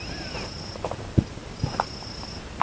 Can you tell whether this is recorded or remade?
recorded